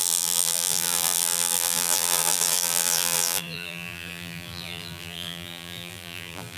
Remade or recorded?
remade